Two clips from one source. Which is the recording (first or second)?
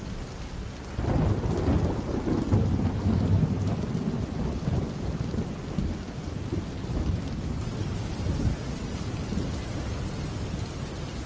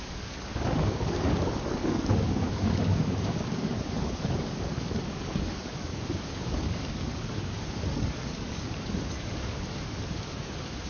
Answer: first